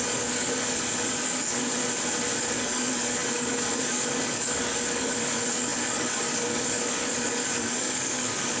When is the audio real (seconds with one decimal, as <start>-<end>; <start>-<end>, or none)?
1.8-2.4